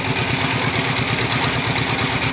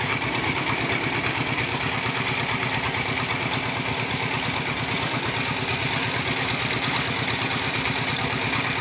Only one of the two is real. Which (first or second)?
first